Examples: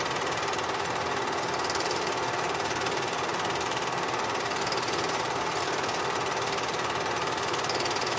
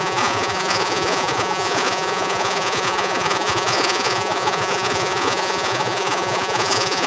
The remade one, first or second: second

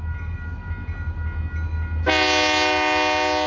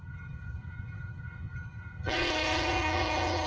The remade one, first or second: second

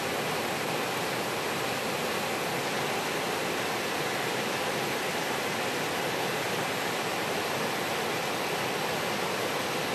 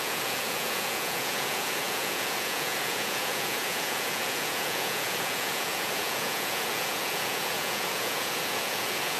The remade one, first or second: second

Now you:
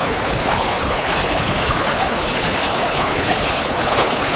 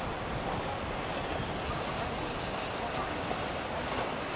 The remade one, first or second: first